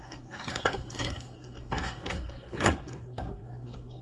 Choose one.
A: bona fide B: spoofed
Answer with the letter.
B